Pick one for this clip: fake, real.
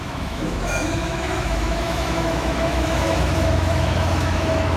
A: fake